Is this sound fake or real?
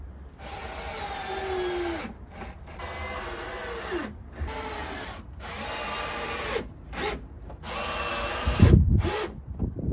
real